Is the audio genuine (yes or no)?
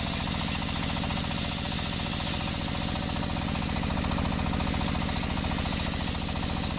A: yes